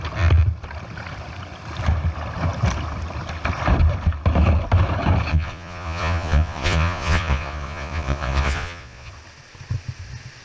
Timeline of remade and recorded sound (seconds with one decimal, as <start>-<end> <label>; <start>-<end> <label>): 0.0-5.3 recorded; 5.3-9.1 remade; 9.1-10.4 recorded